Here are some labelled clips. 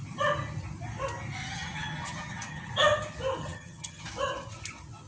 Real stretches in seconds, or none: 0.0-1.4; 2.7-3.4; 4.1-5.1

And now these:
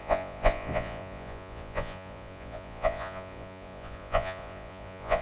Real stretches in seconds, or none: none

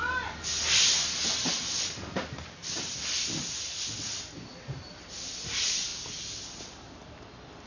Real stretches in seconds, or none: 0.0-7.7

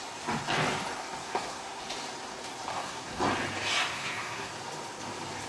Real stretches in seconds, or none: 0.0-1.2; 1.8-2.7; 3.2-3.9; 4.5-5.5